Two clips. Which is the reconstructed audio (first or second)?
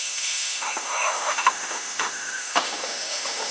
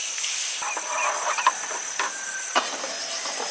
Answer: first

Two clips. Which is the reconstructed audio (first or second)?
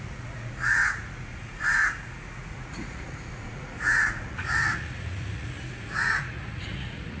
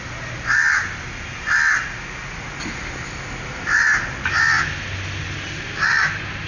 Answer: first